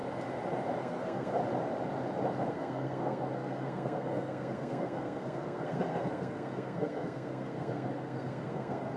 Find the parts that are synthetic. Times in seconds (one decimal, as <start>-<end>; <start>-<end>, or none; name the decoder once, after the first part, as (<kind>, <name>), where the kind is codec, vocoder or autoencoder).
0.8-1.4 (codec, SNAC); 2.5-9.0